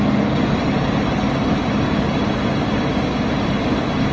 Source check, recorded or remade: recorded